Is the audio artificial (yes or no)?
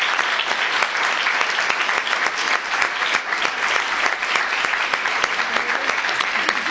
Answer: no